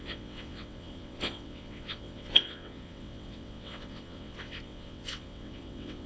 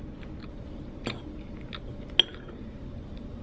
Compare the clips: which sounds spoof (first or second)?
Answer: first